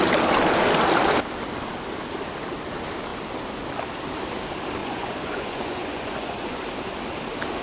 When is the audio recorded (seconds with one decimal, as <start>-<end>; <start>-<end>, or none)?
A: 0.0-4.8; 6.6-7.6